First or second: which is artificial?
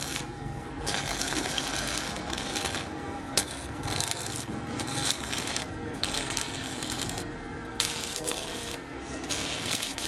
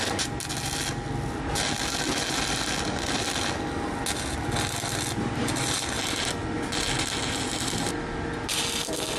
first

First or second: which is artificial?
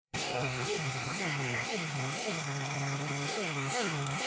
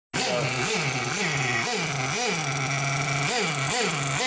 first